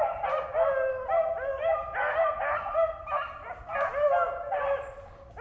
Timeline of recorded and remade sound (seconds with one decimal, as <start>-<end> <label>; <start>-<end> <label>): 0.0-5.4 recorded